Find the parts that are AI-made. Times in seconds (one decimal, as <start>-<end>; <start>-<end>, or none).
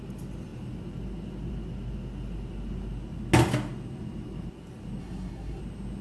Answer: 5.0-5.6